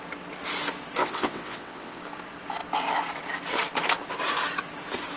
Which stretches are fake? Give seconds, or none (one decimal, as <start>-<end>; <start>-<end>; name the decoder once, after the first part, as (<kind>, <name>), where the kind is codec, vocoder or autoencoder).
1.0-2.0 (vocoder, WaveNeXt)